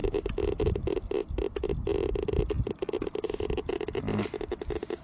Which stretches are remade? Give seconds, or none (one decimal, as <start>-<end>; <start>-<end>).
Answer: none